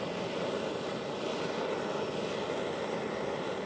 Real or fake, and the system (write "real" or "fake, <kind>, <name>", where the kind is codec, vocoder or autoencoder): real